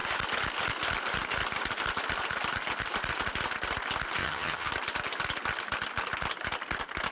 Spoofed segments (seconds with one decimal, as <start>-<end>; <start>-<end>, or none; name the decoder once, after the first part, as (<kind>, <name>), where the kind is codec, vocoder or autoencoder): 4.2-4.7 (vocoder, HiFi-GAN)